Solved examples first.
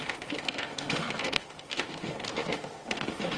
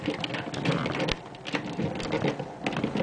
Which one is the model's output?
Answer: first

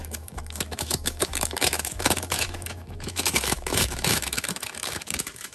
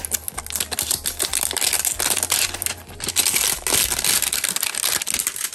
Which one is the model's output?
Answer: first